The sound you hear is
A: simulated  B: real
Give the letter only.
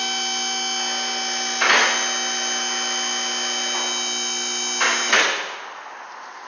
B